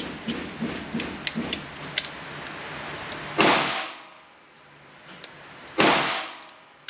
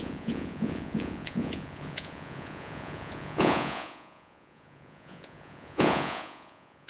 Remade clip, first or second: second